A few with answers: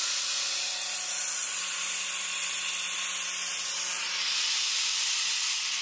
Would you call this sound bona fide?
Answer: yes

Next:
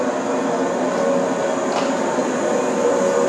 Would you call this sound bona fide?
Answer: yes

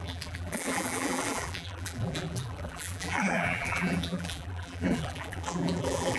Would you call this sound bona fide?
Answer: no